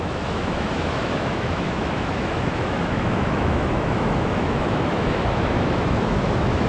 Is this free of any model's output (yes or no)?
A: no